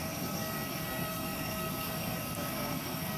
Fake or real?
fake